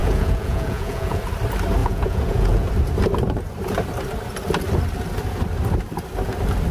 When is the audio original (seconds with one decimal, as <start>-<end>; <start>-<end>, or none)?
1.2-1.8; 2.7-6.7